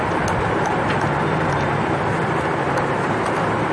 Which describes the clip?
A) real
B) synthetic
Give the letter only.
A